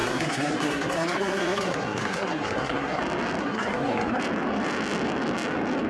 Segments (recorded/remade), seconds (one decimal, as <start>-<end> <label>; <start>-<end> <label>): 0.0-3.0 remade; 3.0-3.4 recorded; 3.4-4.2 remade; 4.2-5.9 recorded